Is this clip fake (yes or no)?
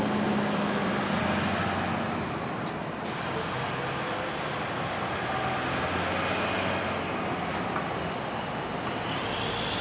no